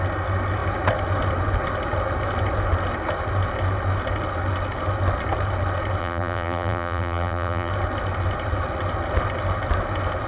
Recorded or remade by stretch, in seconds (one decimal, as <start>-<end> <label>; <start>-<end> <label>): 0.0-6.0 recorded; 6.0-7.7 remade; 7.7-10.3 recorded